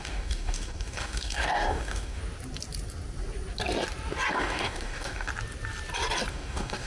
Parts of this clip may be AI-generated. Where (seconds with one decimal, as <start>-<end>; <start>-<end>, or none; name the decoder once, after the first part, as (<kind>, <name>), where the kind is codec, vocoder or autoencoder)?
0.0-2.2 (codec, DAC); 4.3-5.3; 6.3-6.9